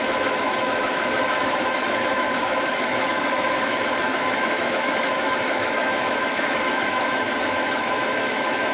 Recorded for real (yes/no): no